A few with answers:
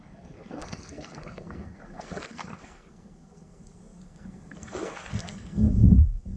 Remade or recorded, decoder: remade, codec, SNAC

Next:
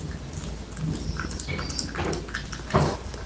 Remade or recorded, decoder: recorded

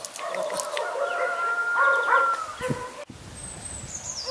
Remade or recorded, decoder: recorded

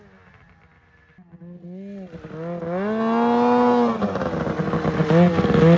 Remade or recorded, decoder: recorded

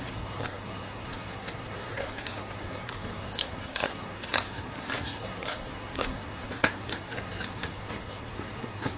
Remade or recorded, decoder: remade, codec, SNAC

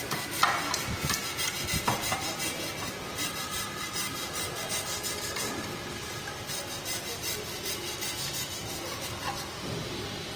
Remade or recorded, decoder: recorded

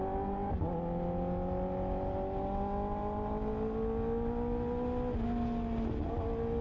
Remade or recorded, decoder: recorded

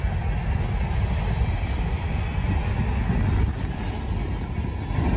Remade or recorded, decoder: recorded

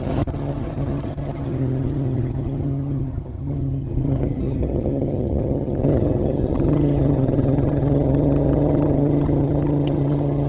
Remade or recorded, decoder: remade, vocoder, HiFi-GAN